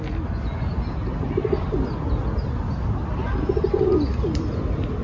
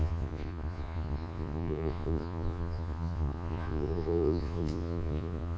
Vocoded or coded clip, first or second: second